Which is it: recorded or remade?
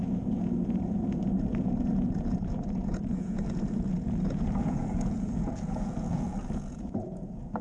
remade